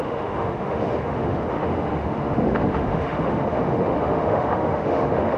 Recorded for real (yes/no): no